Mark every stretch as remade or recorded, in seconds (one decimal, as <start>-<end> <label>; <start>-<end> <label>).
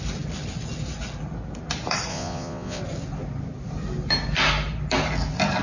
0.0-2.1 recorded; 2.1-2.8 remade; 2.8-5.6 recorded